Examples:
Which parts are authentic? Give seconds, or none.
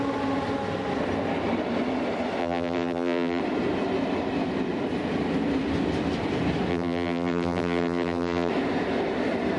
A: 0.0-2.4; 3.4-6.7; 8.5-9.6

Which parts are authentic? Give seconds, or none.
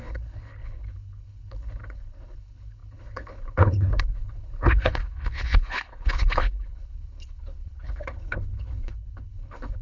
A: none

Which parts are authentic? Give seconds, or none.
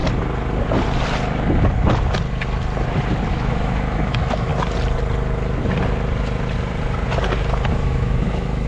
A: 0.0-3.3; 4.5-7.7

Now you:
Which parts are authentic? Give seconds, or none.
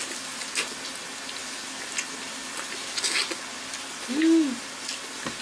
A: 0.0-5.4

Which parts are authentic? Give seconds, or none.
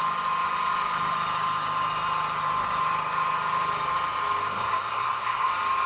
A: 0.0-4.5; 5.5-5.9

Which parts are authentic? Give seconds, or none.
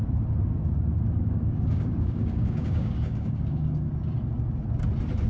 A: 0.0-1.2; 3.9-5.3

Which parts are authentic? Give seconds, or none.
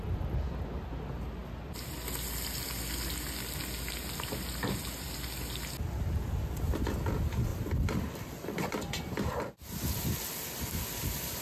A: 0.0-11.4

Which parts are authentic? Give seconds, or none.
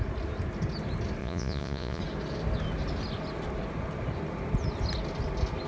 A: 0.0-1.2; 2.0-5.7